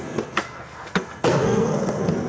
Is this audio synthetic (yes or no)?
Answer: yes